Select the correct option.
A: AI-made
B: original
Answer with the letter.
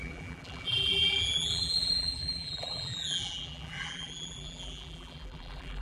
A